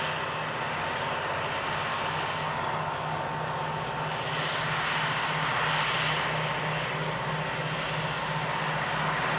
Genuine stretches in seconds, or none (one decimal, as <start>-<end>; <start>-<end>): 0.0-1.9; 3.2-9.4